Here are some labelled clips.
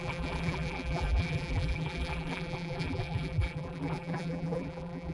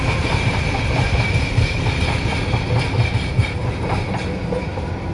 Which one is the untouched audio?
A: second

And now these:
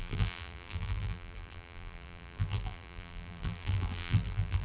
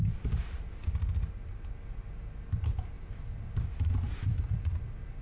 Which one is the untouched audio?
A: second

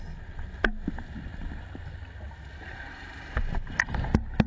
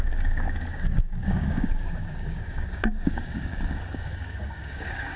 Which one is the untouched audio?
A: first